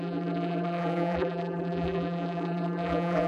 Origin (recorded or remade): remade